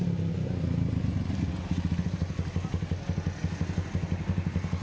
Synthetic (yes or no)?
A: no